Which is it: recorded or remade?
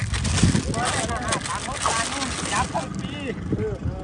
recorded